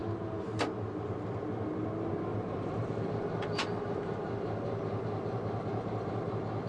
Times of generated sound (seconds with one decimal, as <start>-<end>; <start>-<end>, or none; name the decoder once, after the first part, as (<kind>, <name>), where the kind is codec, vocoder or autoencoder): 2.3-6.3 (vocoder, BigVGAN v2)

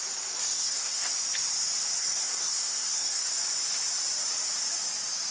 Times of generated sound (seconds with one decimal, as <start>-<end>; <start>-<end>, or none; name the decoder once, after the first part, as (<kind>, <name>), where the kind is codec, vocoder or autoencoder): 0.4-1.1 (codec, SNAC); 2.0-3.2

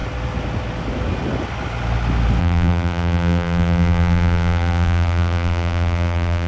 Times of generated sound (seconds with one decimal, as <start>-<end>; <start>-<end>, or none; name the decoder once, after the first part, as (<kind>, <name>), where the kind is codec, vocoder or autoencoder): 2.4-6.5 (vocoder, BigVGAN v2)

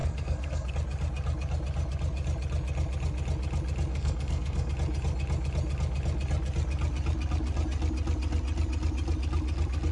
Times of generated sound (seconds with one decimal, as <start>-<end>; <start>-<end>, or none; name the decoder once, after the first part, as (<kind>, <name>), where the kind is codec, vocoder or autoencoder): 0.0-0.7 (codec, SNAC); 3.9-4.7

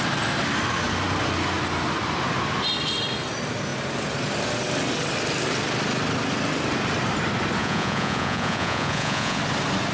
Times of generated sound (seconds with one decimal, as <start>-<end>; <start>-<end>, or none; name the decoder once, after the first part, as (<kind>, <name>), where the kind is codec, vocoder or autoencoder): 7.6-9.4 (vocoder, Vocos)